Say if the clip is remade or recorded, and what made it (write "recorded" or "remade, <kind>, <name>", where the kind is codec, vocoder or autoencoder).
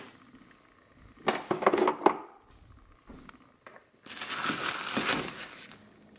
recorded